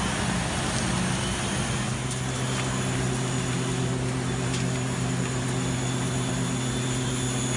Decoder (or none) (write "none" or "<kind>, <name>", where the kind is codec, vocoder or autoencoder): none